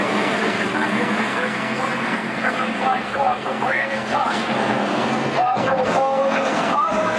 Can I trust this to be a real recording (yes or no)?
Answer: no